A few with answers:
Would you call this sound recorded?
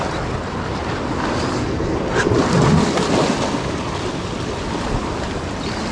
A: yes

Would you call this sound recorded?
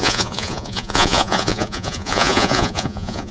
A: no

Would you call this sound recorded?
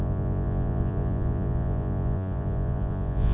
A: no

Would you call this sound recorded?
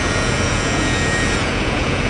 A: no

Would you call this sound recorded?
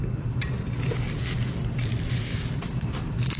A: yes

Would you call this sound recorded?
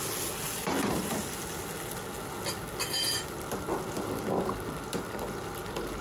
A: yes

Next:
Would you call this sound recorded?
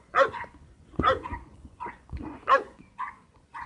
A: no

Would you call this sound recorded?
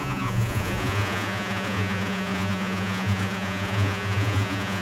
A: no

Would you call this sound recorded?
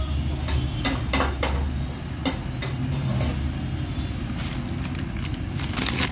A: yes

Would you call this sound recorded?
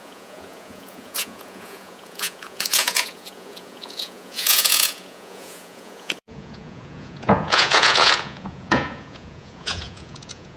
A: no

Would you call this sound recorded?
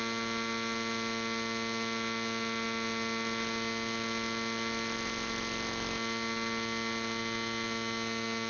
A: yes